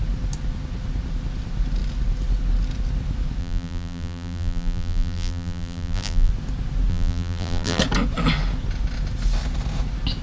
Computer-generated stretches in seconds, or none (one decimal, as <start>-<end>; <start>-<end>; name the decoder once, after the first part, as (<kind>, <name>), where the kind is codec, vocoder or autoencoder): 3.4-6.3 (vocoder, BigVGAN v2); 6.9-7.8